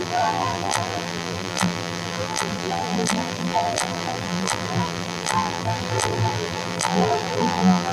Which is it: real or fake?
fake